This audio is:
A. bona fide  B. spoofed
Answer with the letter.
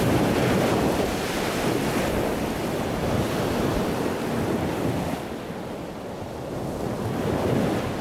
A